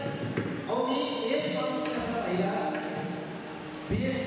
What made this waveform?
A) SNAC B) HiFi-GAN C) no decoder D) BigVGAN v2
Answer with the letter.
C